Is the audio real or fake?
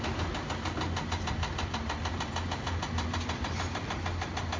real